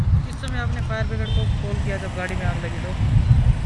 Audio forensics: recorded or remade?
recorded